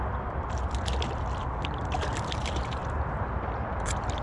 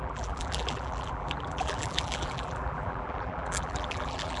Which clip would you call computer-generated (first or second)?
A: second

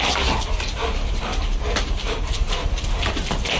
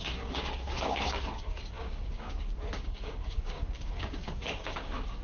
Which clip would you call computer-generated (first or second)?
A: second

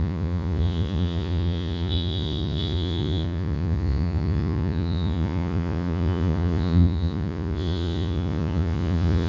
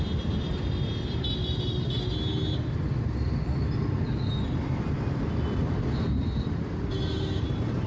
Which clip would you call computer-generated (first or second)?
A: first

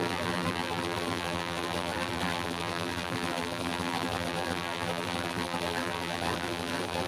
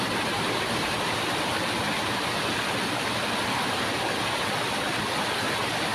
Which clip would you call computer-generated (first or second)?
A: first